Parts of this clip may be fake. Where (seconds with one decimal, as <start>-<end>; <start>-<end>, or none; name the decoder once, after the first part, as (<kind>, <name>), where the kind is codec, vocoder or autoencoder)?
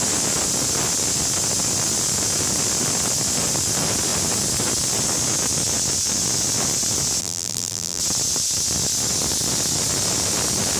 7.2-8.0 (vocoder, BigVGAN v2)